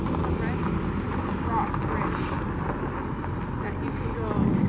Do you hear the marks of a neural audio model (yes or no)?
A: no